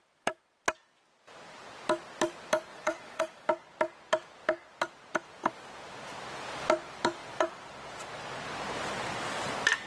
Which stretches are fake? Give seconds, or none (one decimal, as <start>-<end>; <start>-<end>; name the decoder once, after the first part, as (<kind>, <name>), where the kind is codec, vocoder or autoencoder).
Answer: 2.7-3.5 (vocoder, Vocos)